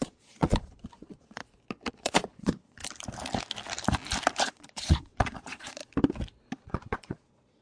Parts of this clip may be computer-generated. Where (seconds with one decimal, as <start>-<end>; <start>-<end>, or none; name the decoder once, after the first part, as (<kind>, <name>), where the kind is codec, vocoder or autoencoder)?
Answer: 0.0-1.4 (vocoder, Vocos); 1.9-2.8; 4.4-5.8; 6.6-7.6